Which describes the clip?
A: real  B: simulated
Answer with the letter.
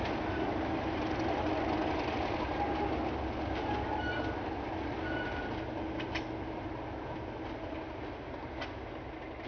A